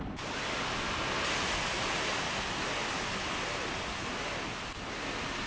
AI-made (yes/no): no